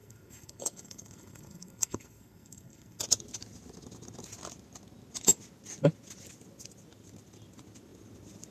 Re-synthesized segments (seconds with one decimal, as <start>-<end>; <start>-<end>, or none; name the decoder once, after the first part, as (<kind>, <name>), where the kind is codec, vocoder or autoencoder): 0.0-3.0 (codec, SNAC)